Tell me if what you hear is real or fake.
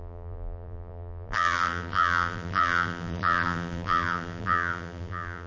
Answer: fake